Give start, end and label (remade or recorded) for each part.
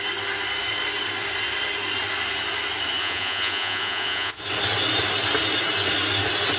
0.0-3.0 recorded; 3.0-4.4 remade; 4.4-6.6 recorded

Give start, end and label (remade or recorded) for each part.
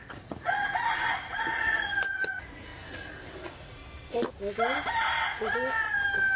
0.0-2.7 remade; 2.7-3.3 recorded; 3.3-3.8 remade; 3.8-6.4 recorded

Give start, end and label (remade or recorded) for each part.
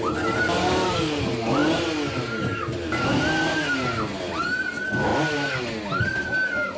0.0-0.6 recorded; 0.6-1.2 remade; 1.2-6.8 recorded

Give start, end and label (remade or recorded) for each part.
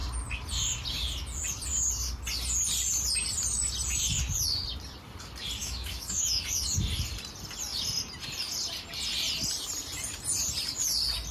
0.0-5.6 recorded; 5.6-6.4 remade; 6.4-11.3 recorded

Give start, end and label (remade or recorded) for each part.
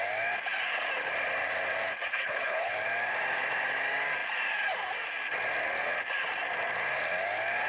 0.0-2.1 recorded; 2.1-2.7 remade; 2.7-7.7 recorded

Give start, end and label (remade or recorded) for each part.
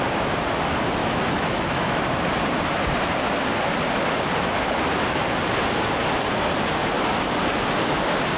0.0-1.0 recorded; 1.0-2.0 remade; 2.0-8.4 recorded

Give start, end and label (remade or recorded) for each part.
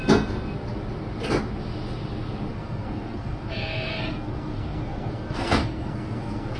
0.0-2.5 recorded; 2.5-6.6 remade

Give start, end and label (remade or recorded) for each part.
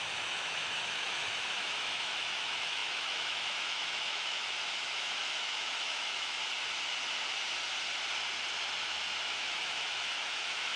0.0-6.4 remade; 6.4-9.2 recorded; 9.2-10.8 remade